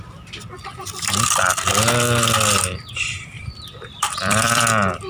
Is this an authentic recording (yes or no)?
no